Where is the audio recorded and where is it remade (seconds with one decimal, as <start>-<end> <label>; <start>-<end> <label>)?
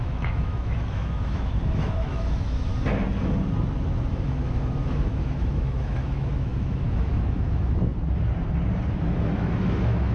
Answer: 0.0-2.7 remade; 2.7-4.1 recorded; 4.1-7.9 remade; 7.9-8.9 recorded; 8.9-10.1 remade